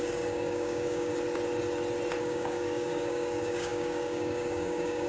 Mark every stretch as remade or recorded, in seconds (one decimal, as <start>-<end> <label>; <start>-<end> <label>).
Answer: 0.0-1.1 remade; 1.1-2.2 recorded; 2.2-5.1 remade